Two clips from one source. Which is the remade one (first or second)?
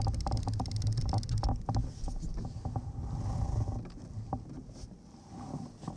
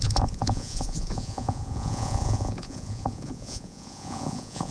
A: second